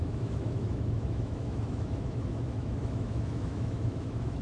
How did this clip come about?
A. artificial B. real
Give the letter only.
A